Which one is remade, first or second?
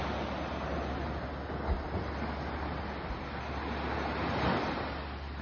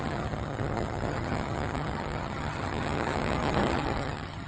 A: second